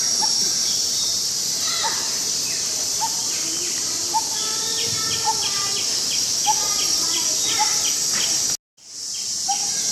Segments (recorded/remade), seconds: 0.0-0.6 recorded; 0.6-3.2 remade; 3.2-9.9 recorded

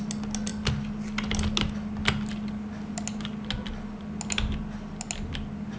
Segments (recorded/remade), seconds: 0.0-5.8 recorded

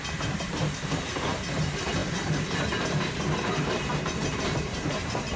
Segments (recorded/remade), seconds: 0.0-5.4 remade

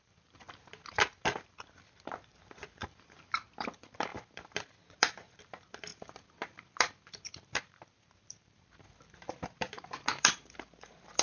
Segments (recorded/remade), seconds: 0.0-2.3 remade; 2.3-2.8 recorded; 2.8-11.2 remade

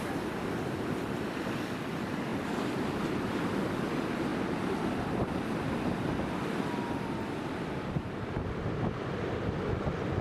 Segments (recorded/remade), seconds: 0.0-4.3 recorded; 4.3-9.2 remade; 9.2-10.2 recorded

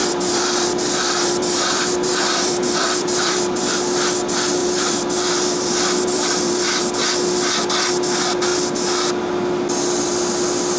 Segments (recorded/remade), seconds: 0.0-3.7 remade; 3.7-4.6 recorded; 4.6-6.8 remade; 6.8-10.8 recorded

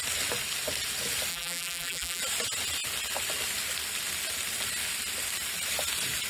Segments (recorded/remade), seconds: 0.0-1.3 recorded; 1.3-2.2 remade; 2.2-6.3 recorded